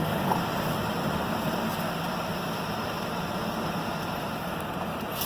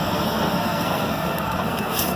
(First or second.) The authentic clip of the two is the first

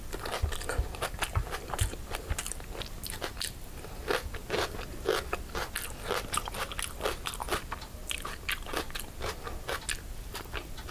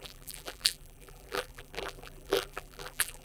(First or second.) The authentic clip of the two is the first